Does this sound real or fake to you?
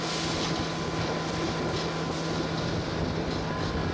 real